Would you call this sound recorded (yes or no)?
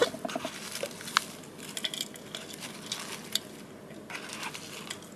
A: yes